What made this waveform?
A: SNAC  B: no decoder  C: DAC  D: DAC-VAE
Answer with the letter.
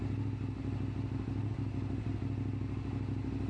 B